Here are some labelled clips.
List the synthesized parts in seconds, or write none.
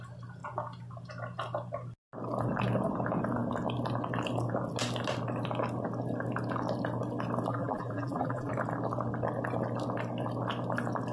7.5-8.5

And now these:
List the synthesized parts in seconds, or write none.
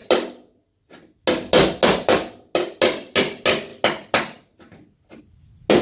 none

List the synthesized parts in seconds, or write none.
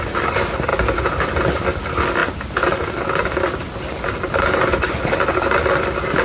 none